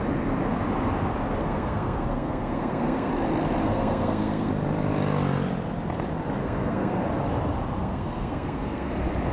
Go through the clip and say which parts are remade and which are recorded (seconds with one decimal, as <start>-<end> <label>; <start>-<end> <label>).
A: 0.0-1.4 recorded; 1.4-3.1 remade; 3.1-3.6 recorded; 3.6-4.5 remade; 4.5-6.4 recorded; 6.4-7.0 remade; 7.0-7.8 recorded; 7.8-8.9 remade; 8.9-9.3 recorded